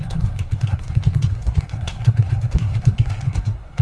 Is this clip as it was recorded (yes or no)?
no